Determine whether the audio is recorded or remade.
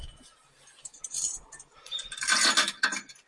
recorded